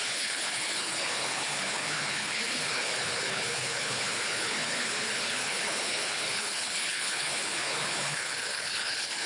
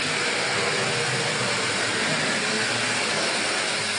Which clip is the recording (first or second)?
second